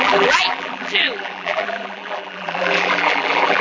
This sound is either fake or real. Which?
fake